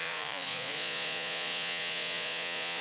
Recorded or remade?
remade